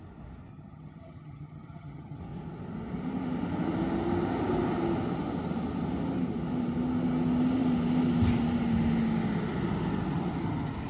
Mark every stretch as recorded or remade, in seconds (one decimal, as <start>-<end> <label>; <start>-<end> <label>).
0.0-0.5 recorded; 0.5-2.2 remade; 2.2-10.9 recorded